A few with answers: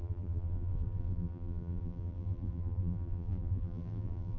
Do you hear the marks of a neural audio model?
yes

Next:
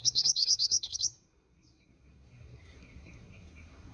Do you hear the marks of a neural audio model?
yes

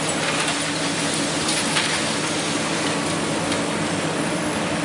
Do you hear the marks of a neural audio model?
no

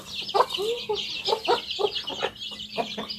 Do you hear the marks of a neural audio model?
no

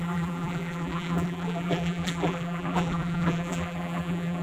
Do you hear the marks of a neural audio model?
yes